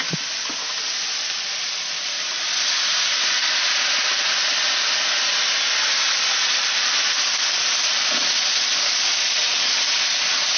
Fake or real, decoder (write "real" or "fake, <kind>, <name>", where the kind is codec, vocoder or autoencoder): real